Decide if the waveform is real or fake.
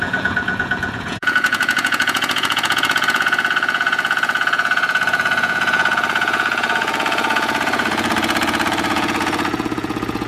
fake